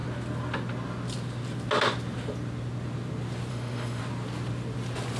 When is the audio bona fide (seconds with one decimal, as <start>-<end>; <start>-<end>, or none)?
0.0-3.5; 4.0-5.2